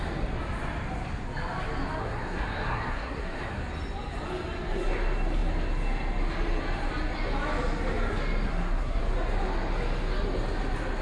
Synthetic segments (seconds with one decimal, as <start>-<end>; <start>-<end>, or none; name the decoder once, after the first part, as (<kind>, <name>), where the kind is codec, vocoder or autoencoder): 2.0-3.6 (codec, SNAC); 8.5-9.0